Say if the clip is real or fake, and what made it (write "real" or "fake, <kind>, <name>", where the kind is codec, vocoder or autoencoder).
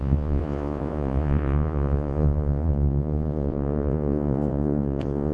fake, vocoder, Vocos